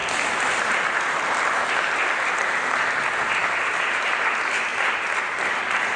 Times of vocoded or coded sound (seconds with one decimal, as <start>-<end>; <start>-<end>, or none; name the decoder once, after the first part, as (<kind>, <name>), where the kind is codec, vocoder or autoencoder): none

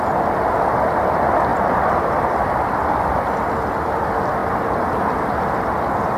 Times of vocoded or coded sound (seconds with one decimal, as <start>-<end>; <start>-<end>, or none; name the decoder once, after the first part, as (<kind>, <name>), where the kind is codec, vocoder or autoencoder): none

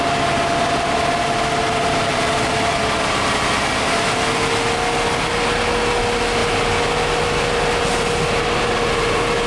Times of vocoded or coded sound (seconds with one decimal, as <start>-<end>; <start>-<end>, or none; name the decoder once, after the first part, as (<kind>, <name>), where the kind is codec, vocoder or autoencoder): none

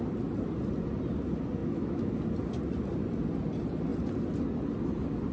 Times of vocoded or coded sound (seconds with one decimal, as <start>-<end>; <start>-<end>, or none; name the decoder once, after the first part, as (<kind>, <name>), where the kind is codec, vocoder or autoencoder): 1.6-2.1 (autoencoder, DAC-VAE)

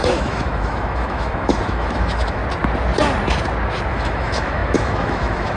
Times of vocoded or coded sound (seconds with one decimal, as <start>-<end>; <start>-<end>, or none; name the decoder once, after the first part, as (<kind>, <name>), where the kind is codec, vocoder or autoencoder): 0.0-2.4 (autoencoder, DAC-VAE); 3.9-5.6

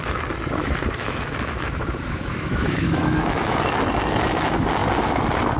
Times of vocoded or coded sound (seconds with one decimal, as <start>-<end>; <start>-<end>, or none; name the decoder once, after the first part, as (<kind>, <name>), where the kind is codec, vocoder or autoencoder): 0.6-3.6 (autoencoder, DAC-VAE)

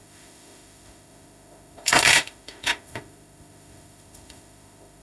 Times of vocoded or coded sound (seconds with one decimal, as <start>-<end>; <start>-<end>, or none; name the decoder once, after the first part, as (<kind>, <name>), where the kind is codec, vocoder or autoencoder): 0.0-5.0 (autoencoder, DAC-VAE)

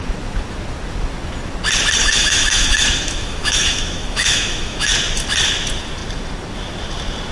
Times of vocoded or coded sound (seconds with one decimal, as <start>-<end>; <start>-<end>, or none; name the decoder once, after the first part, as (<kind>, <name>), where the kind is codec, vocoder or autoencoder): 2.0-4.9 (autoencoder, DAC-VAE)